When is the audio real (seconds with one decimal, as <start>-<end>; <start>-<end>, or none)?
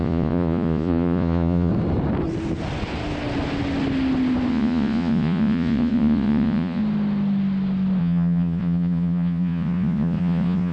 1.7-4.5; 6.8-8.0